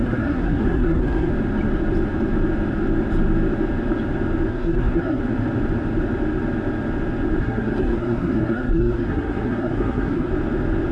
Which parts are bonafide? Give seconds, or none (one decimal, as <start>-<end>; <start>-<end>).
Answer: 1.3-4.5; 5.2-7.4; 10.3-10.9